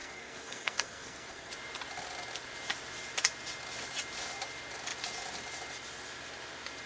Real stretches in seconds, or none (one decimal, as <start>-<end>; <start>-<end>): 1.5-6.9